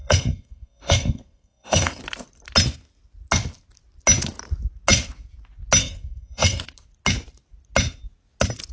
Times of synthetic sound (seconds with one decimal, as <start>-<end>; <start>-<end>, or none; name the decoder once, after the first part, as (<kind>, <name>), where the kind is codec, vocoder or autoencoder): 0.0-2.0 (codec, SNAC); 5.8-6.6